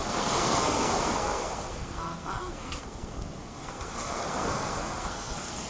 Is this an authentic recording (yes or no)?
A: no